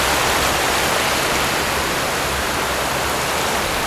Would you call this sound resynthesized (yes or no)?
no